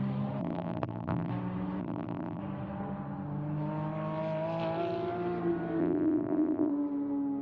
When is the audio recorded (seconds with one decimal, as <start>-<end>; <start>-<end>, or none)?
0.0-0.4; 1.3-1.8; 2.4-5.8; 6.7-7.4